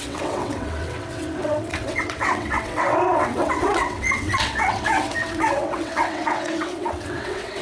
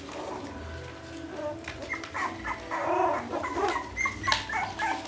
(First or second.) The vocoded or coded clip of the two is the first